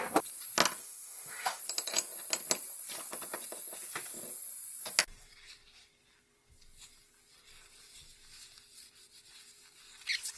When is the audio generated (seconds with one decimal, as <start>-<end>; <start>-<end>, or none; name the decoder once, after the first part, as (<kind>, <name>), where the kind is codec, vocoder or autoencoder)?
0.8-1.6 (autoencoder, DAC-VAE)